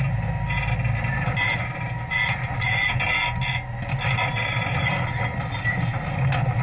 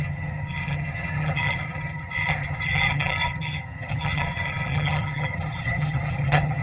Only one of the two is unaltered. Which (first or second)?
first